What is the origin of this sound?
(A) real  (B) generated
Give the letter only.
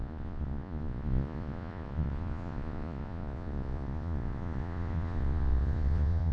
B